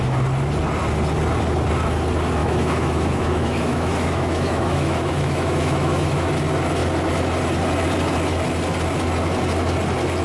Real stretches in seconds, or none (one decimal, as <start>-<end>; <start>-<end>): 0.0-2.4; 6.3-10.2